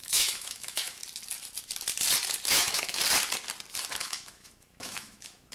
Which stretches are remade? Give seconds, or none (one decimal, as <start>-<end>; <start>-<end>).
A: 0.0-1.0; 2.5-3.0; 3.9-5.5